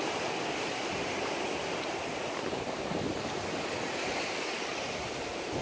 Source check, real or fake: real